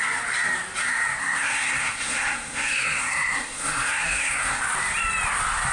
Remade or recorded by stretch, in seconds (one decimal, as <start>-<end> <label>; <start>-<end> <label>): 0.0-1.2 recorded; 1.2-4.6 remade; 4.6-5.7 recorded